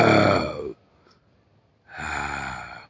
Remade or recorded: recorded